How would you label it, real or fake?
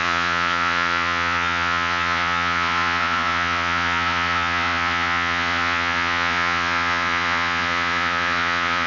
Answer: fake